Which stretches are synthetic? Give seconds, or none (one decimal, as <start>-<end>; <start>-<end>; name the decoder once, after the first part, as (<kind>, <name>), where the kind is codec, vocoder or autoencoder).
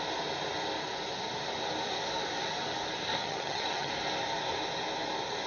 3.2-3.9 (vocoder, HiFi-GAN)